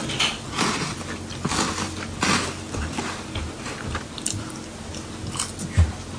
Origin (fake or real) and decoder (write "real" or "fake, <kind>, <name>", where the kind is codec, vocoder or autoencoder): real